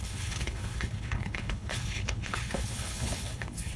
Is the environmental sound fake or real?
fake